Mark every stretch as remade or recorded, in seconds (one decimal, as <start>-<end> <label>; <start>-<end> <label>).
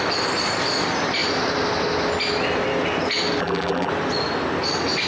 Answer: 0.0-3.4 recorded; 3.4-3.9 remade; 3.9-5.1 recorded